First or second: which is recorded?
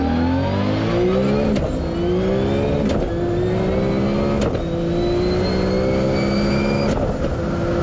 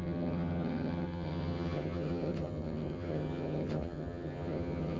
first